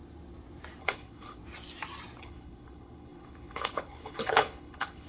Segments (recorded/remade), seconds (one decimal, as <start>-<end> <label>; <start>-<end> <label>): 0.0-0.8 recorded; 0.8-1.4 remade; 1.4-2.2 recorded; 2.2-5.1 remade